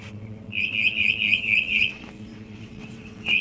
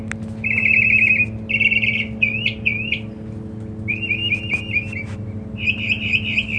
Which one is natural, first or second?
second